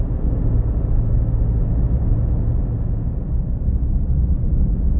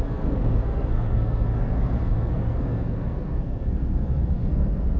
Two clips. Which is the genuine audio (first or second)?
first